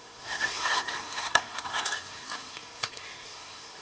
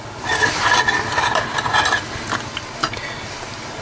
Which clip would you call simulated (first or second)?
first